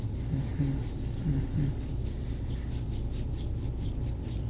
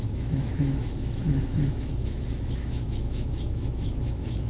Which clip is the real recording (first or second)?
first